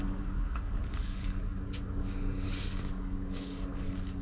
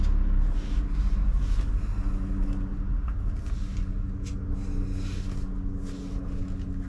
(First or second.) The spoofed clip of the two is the first